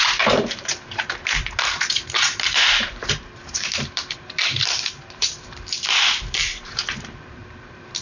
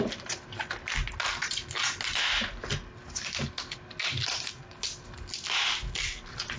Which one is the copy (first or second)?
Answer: first